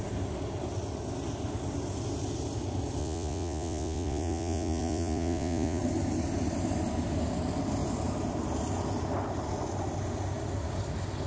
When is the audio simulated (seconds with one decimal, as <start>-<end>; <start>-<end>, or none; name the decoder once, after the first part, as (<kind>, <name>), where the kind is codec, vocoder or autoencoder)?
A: 3.0-5.8 (vocoder, Vocos)